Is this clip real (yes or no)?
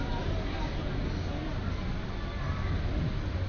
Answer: yes